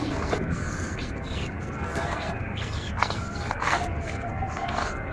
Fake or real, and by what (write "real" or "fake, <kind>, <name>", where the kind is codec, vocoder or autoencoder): fake, codec, SNAC